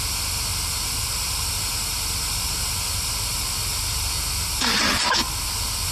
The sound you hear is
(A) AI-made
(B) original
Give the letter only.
B